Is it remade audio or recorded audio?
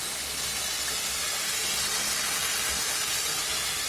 recorded